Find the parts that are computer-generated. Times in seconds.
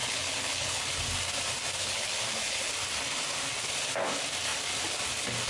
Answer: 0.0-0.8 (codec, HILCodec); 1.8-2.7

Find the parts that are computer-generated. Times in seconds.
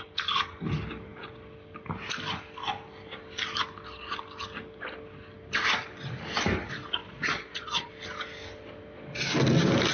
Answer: 7.0-7.9 (vocoder, Vocos)